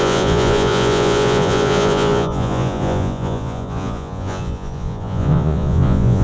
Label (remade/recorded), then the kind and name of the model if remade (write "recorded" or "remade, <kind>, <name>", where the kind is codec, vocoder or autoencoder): remade, vocoder, Vocos